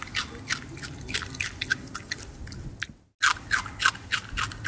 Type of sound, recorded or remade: recorded